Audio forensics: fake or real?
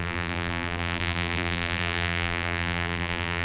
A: fake